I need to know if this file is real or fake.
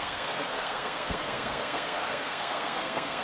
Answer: fake